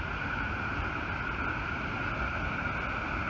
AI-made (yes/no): no